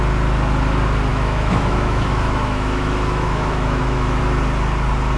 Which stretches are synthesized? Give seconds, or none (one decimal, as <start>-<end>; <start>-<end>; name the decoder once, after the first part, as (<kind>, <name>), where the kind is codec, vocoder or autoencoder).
1.1-4.2 (autoencoder, DAC-VAE)